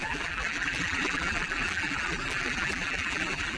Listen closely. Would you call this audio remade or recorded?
remade